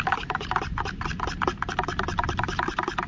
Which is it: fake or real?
real